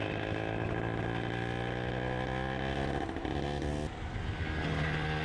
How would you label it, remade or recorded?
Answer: recorded